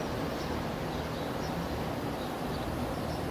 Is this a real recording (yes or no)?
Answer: yes